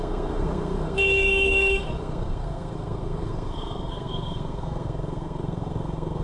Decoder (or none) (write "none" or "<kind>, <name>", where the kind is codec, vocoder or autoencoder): codec, SNAC